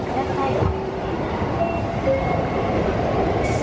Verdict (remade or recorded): recorded